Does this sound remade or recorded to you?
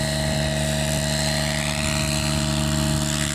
recorded